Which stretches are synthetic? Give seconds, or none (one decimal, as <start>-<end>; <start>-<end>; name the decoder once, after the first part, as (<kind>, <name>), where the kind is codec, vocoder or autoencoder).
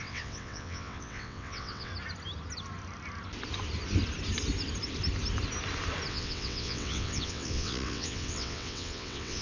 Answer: 0.0-1.9 (vocoder, WaveNeXt); 6.1-9.4